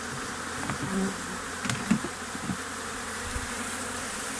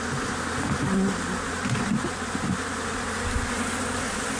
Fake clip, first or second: first